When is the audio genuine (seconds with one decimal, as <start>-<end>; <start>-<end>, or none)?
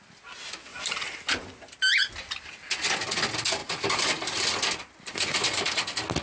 0.0-0.7; 1.4-3.6; 4.5-5.1; 5.8-6.2